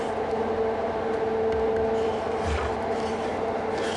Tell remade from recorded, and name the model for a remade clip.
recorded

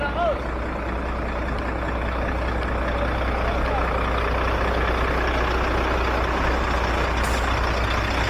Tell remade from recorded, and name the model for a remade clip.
recorded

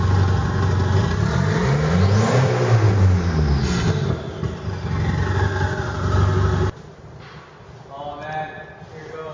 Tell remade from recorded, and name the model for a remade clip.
recorded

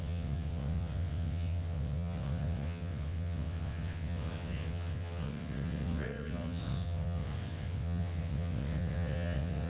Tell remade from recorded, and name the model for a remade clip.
remade, vocoder, WaveNeXt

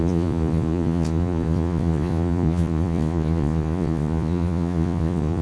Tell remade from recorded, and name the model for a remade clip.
remade, vocoder, Vocos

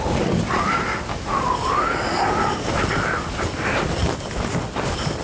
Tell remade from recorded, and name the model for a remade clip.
recorded